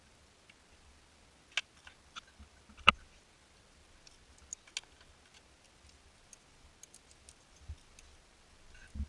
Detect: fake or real real